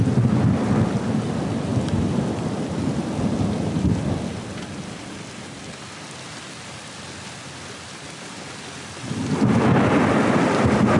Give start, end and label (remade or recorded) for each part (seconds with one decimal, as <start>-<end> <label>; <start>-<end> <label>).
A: 0.0-11.0 recorded